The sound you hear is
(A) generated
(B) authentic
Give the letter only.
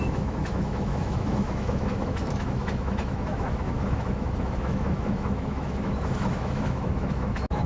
A